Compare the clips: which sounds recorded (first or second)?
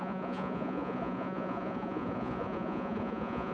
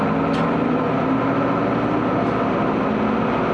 second